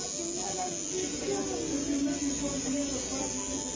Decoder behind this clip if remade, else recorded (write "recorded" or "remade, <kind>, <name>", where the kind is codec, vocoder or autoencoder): recorded